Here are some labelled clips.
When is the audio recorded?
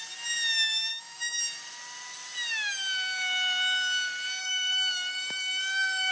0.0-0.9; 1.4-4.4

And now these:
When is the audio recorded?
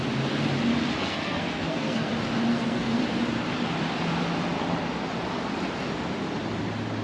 0.0-1.0; 2.1-2.5; 3.0-7.0